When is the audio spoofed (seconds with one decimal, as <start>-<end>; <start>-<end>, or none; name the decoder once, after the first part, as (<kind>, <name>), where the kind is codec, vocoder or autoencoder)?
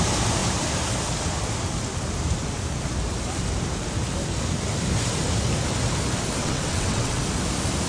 6.4-7.2 (vocoder, WaveNeXt)